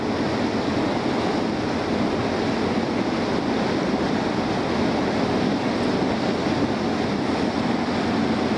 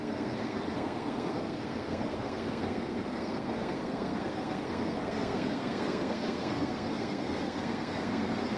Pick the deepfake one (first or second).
second